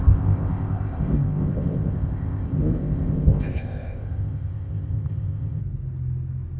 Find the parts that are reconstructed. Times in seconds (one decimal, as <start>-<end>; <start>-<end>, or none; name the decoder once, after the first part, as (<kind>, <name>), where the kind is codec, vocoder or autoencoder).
0.0-5.6 (codec, ZipCodec)